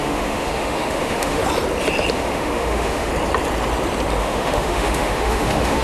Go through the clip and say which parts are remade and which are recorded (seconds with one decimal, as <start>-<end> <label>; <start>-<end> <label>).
0.0-1.4 remade; 1.4-2.1 recorded; 2.1-3.1 remade; 3.1-4.2 recorded; 4.2-5.8 remade